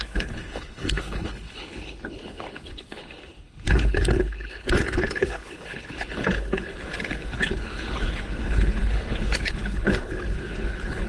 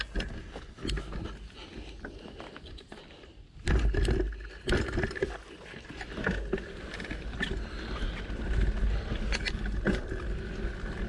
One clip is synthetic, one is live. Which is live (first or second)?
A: second